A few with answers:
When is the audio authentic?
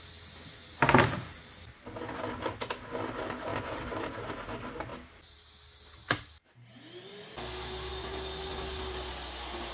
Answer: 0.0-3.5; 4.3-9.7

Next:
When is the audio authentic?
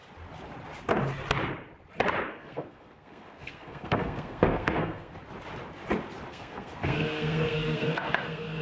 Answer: 0.0-2.3; 5.1-6.3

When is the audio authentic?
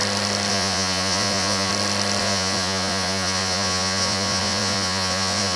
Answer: 0.0-0.5; 1.7-2.2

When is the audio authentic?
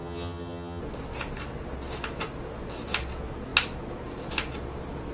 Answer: 0.8-5.1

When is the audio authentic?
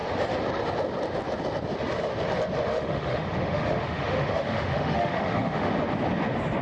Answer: 0.0-2.7; 5.7-6.6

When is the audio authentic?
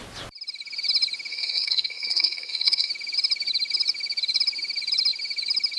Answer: 0.0-1.3; 2.9-5.8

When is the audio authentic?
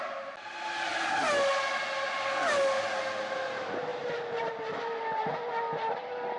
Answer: 0.0-6.4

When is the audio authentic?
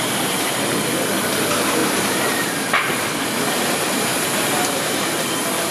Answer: 0.0-1.8; 2.6-4.1; 5.1-5.7